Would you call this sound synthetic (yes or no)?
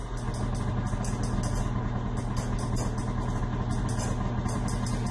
no